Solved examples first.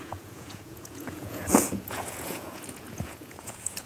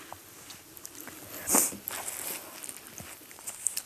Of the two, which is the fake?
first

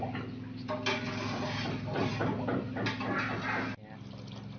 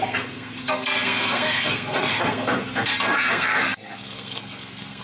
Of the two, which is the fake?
second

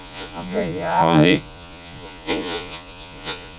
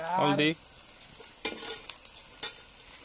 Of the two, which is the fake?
first